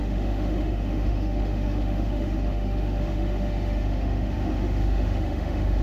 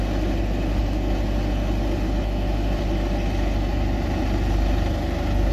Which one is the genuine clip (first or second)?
second